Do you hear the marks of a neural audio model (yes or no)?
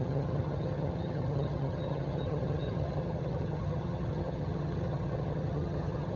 yes